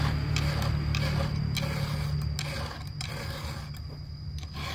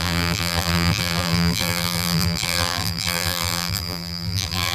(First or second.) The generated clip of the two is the second